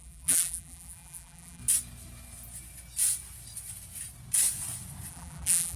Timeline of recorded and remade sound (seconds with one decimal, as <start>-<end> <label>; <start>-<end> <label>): 0.0-1.6 remade; 1.6-5.1 recorded; 5.1-5.8 remade